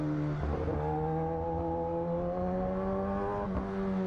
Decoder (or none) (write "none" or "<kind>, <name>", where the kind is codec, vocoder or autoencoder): none